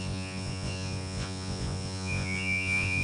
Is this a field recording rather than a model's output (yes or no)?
no